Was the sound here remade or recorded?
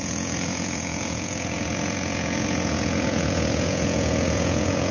remade